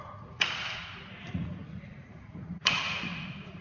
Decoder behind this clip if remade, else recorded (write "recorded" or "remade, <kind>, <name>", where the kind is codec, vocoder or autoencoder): remade, vocoder, Vocos